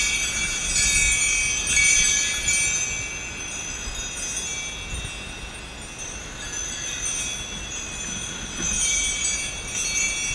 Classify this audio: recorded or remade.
recorded